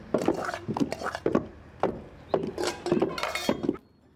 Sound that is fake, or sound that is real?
real